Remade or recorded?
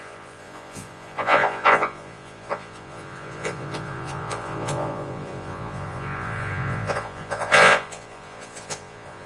remade